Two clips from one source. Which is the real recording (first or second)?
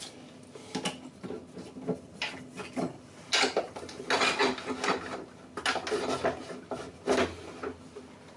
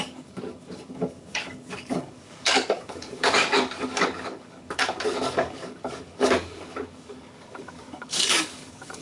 first